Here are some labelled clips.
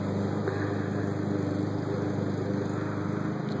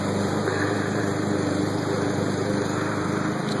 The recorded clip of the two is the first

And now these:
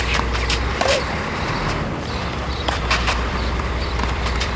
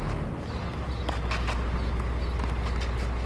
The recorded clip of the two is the second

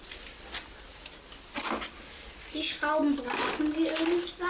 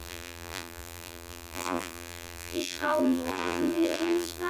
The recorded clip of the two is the first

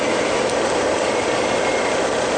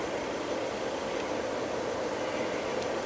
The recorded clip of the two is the first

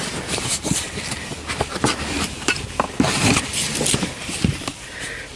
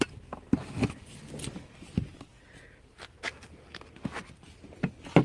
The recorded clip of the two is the second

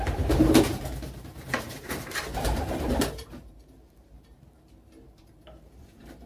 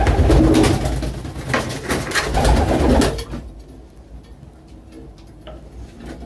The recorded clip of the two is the second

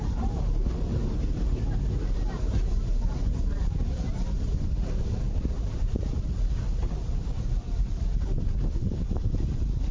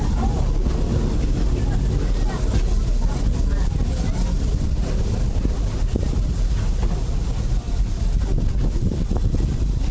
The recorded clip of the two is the second